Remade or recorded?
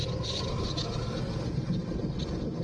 recorded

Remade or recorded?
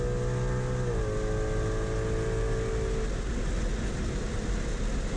recorded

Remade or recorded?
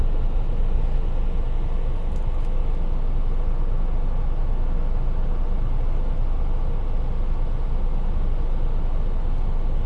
recorded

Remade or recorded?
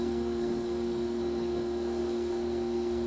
remade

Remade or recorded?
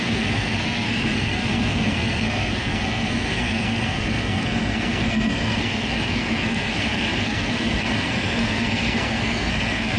remade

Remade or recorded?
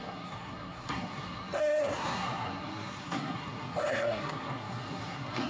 remade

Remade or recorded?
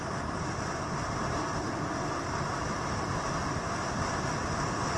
recorded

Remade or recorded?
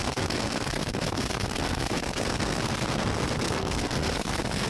remade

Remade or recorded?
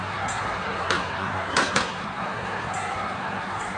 remade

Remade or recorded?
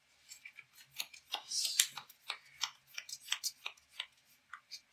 recorded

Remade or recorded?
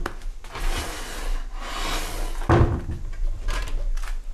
recorded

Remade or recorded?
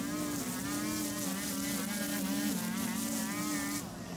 recorded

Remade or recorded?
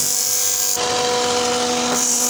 recorded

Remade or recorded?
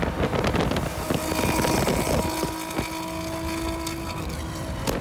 recorded